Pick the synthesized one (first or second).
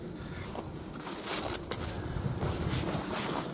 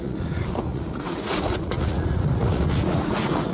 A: second